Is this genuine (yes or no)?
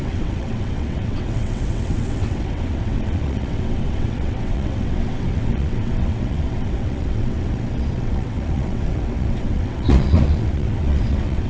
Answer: no